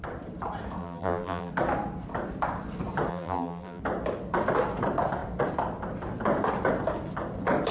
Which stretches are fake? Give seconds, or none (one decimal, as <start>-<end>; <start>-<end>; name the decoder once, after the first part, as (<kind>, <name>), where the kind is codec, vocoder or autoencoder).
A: 0.8-1.5 (vocoder, BigVGAN v2); 3.1-3.8

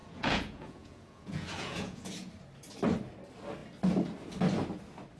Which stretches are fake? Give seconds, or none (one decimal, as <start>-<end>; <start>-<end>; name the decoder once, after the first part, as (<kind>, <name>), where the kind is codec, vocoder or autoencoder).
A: 0.0-2.3 (vocoder, Vocos)